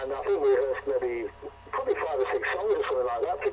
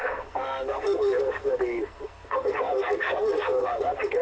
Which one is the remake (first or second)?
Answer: second